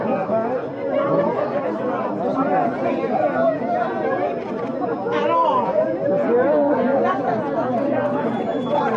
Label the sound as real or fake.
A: real